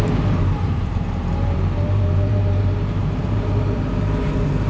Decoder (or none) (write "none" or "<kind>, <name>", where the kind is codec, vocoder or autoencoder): vocoder, BigVGAN v2